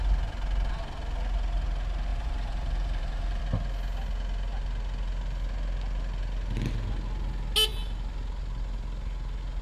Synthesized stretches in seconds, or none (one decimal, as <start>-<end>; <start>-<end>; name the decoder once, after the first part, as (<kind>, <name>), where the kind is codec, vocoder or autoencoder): 2.1-3.4 (vocoder, BigVGAN v2)